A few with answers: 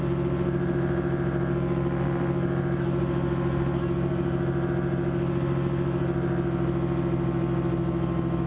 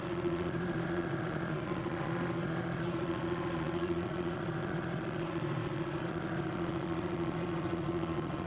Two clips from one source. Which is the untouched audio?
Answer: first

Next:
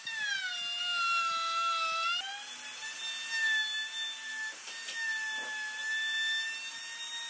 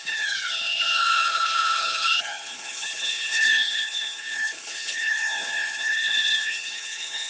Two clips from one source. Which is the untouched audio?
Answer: first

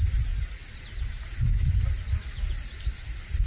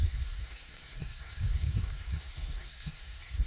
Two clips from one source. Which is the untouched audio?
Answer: first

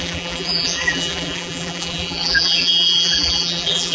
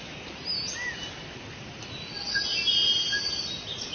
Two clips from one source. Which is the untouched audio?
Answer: second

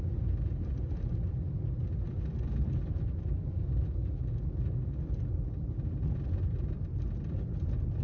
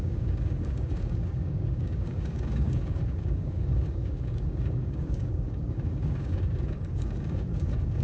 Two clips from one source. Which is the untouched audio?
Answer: first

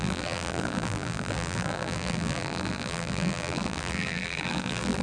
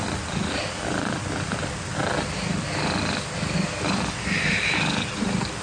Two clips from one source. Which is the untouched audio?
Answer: second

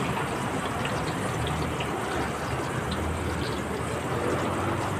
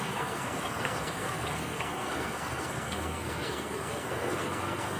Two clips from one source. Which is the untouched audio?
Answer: first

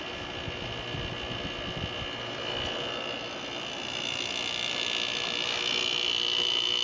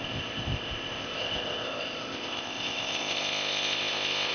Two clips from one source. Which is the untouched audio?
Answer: first